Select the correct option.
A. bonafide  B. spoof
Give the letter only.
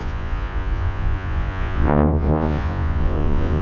B